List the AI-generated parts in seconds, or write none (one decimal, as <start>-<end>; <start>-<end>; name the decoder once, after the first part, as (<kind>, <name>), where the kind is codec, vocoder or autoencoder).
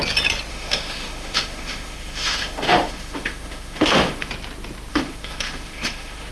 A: 0.5-4.3 (autoencoder, DAC-VAE); 4.9-6.3